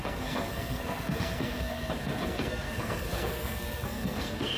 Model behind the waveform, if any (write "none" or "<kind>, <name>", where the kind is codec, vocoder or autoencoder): codec, SNAC